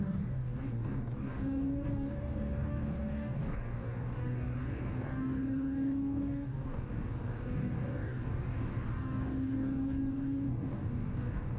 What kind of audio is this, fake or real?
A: fake